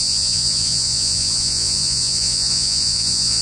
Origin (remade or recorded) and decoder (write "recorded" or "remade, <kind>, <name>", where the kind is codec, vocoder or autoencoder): remade, vocoder, Vocos